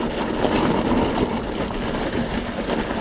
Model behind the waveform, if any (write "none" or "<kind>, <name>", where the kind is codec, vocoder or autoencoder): none